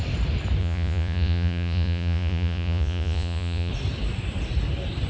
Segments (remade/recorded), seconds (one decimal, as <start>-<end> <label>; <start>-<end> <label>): 0.0-0.6 recorded; 0.6-3.7 remade; 3.7-5.1 recorded